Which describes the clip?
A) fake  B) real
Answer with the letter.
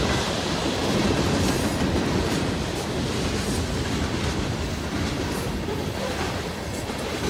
A